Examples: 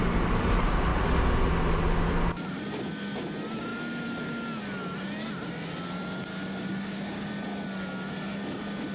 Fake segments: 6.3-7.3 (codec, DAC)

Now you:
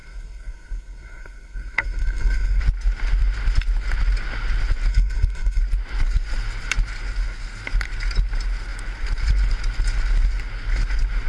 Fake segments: 0.0-2.6 (codec, SNAC); 4.9-5.6

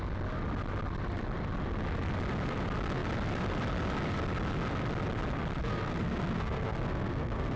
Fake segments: 5.6-7.6 (codec, SNAC)

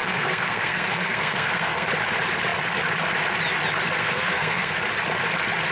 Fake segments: 0.0-1.9 (codec, SNAC); 4.0-4.7